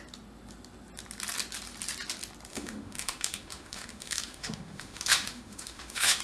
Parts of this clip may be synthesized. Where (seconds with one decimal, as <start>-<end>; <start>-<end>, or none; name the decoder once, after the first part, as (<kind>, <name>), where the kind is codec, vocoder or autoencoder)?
2.5-6.2 (autoencoder, DAC-VAE)